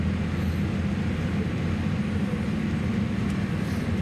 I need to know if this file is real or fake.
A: real